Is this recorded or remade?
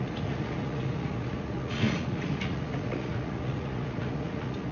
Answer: remade